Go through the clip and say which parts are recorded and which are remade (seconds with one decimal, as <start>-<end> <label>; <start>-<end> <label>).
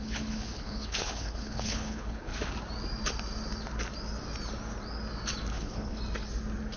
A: 0.0-2.3 remade; 2.3-5.5 recorded; 5.5-6.0 remade; 6.0-6.8 recorded